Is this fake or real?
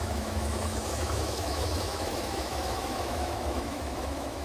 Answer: fake